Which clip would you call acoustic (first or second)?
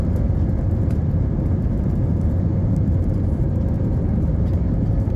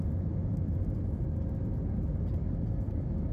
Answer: second